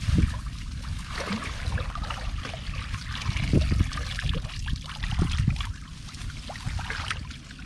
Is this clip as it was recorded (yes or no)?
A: yes